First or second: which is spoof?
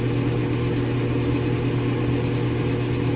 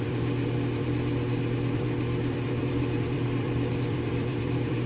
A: second